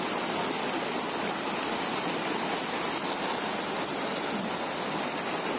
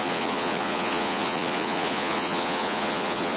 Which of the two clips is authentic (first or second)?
first